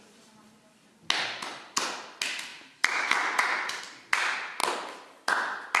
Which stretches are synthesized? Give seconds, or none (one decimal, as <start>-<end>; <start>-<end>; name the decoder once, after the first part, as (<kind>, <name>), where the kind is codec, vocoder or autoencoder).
2.5-3.8 (vocoder, BigVGAN v2)